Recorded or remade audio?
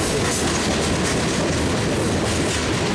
recorded